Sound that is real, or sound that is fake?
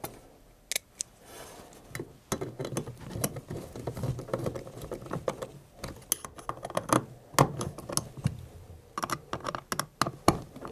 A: real